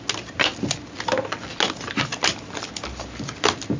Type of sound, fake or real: real